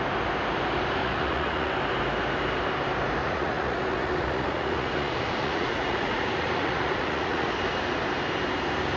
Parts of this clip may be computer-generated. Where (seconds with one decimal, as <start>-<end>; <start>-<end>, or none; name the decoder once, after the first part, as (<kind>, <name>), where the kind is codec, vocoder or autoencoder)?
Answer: 1.0-1.7 (vocoder, Vocos); 3.2-7.5